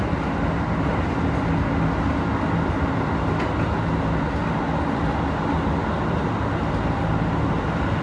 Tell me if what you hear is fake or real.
real